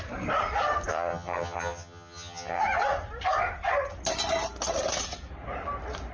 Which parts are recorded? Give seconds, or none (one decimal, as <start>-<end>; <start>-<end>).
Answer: 0.0-0.9; 2.6-6.1